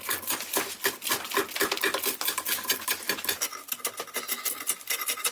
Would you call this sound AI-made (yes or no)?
no